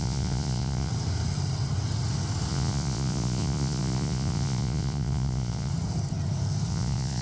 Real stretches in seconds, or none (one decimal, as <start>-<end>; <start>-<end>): 0.9-2.5; 5.7-6.7